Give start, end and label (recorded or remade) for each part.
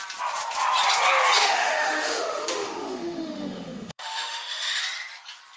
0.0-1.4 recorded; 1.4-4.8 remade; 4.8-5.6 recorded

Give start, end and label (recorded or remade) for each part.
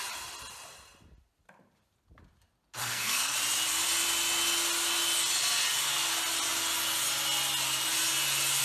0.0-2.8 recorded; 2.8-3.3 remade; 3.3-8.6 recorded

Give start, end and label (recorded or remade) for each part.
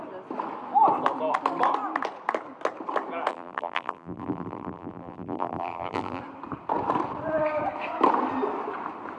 0.0-3.3 recorded; 3.3-6.2 remade; 6.2-9.2 recorded